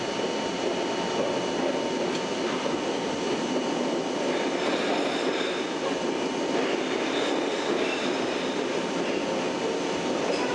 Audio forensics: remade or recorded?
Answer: recorded